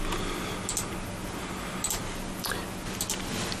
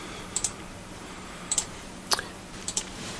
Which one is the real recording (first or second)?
first